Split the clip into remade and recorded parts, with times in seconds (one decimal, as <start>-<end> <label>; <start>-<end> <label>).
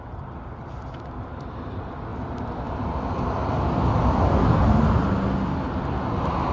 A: 0.0-2.1 recorded; 2.1-3.3 remade; 3.3-6.5 recorded